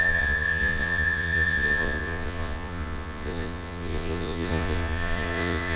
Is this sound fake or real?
fake